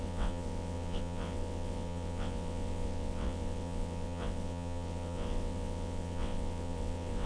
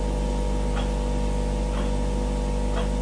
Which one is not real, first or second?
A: first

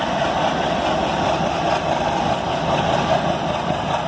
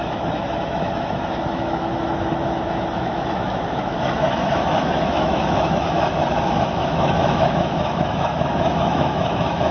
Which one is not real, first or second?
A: second